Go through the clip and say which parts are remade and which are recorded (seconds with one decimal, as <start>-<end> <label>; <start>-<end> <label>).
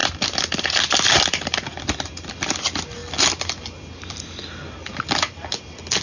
0.0-6.0 recorded